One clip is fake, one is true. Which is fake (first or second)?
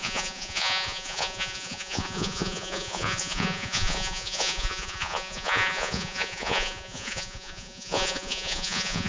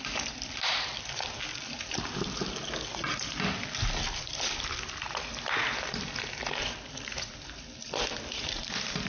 first